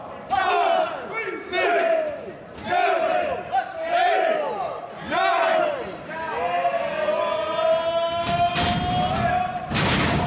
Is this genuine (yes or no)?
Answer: yes